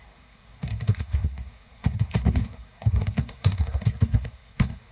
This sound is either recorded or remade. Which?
remade